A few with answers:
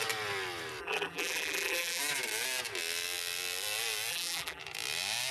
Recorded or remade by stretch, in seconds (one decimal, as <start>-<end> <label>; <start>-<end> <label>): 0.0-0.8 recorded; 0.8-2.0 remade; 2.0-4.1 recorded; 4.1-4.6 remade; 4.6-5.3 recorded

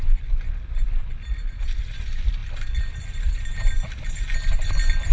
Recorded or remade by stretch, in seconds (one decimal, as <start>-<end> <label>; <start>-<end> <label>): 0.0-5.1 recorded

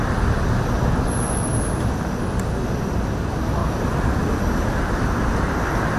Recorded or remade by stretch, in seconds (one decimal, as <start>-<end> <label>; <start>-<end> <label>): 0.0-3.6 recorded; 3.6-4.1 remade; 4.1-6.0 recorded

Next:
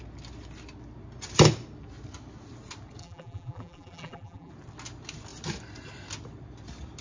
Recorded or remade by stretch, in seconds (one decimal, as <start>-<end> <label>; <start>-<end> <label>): 0.0-3.0 recorded; 3.0-4.5 remade; 4.5-7.0 recorded

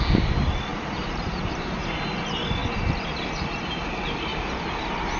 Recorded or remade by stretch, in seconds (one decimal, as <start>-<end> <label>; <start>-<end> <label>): 0.0-0.7 recorded; 0.7-2.0 remade; 2.0-4.3 recorded; 4.3-5.2 remade

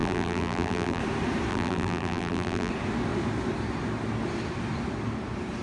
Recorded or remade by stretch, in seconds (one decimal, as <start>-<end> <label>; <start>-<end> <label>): 0.0-1.0 remade; 1.0-1.5 recorded; 1.5-2.7 remade; 2.7-5.6 recorded

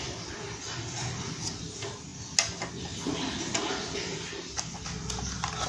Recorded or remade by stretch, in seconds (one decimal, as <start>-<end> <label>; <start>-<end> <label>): 0.0-5.7 recorded

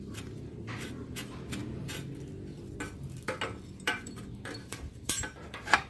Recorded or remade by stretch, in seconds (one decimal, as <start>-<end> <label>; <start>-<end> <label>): 0.0-1.6 remade; 1.6-3.8 recorded; 3.8-5.9 remade